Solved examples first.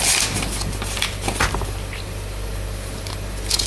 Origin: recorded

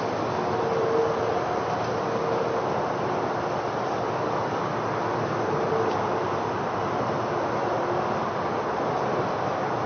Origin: recorded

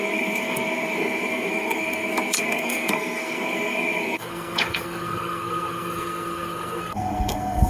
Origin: remade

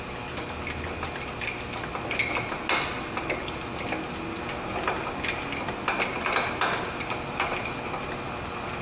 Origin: recorded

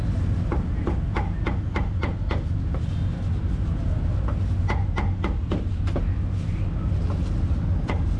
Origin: recorded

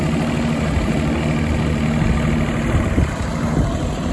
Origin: recorded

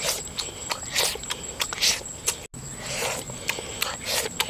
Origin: recorded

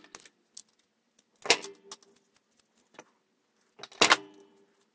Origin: recorded